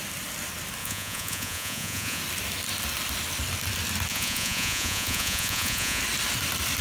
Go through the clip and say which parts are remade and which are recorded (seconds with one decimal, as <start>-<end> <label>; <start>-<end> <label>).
0.0-0.8 recorded; 0.8-2.2 remade; 2.2-4.1 recorded; 4.1-6.0 remade; 6.0-6.8 recorded